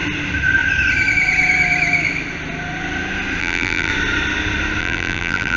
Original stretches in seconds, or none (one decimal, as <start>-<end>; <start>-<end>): 0.0-3.4; 3.9-4.8